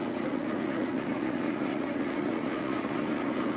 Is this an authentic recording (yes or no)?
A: no